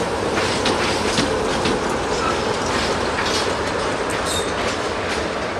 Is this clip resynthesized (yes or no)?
no